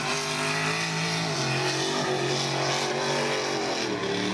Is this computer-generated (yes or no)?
no